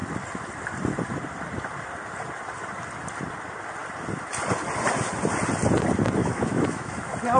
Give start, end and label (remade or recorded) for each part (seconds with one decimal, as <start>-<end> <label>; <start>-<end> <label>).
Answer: 0.0-6.2 recorded; 6.2-7.0 remade; 7.0-7.4 recorded